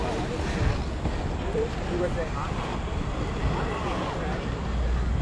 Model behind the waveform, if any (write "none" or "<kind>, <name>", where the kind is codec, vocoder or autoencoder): none